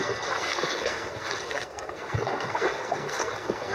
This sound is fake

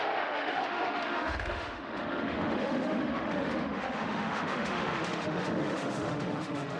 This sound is fake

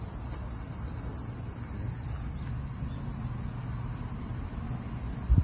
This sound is real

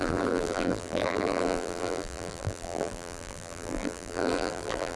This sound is fake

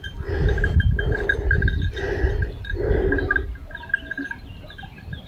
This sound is real